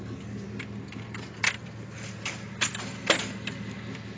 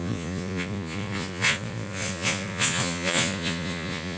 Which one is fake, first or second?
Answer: second